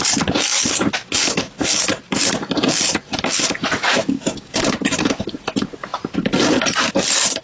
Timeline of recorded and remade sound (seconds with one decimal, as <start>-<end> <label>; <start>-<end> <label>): 0.0-4.0 recorded; 4.0-5.1 remade; 5.1-7.4 recorded